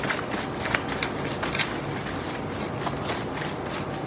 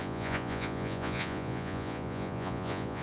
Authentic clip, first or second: first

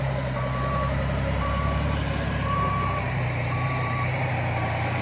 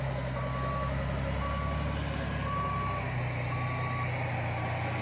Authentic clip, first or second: second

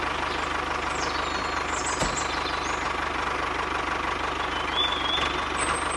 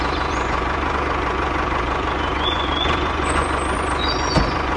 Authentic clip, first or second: first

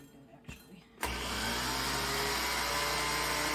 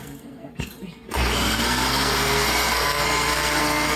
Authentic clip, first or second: first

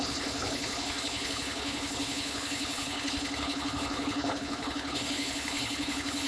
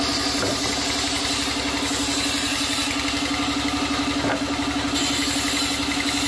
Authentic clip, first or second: second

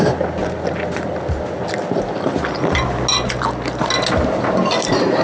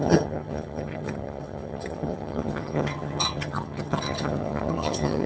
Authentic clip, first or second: first